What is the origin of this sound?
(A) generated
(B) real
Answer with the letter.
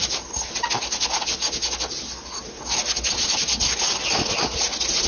B